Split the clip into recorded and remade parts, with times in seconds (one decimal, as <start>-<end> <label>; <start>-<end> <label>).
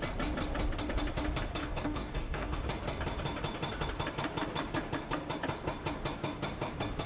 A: 0.0-1.6 recorded; 1.6-2.6 remade; 2.6-7.1 recorded